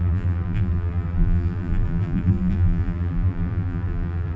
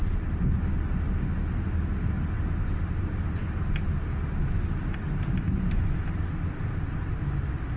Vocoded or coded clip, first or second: first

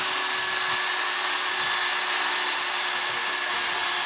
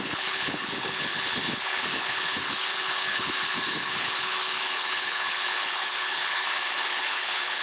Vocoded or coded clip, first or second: second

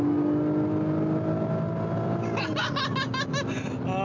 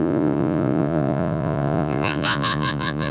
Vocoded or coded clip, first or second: second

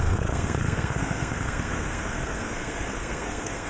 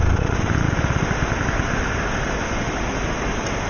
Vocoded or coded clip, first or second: first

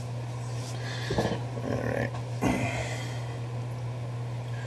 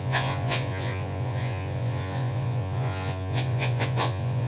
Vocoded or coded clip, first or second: second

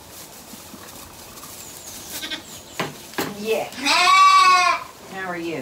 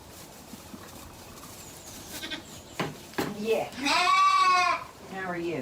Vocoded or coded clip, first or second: second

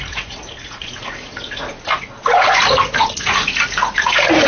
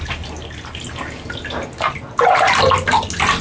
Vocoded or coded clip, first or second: first